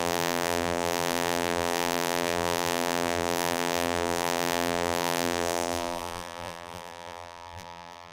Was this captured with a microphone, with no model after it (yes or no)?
no